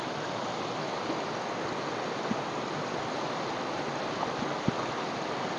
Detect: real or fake real